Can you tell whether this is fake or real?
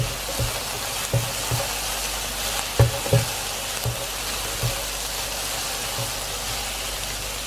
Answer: real